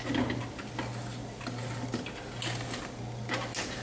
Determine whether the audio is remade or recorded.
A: recorded